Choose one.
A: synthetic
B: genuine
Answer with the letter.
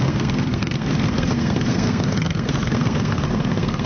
A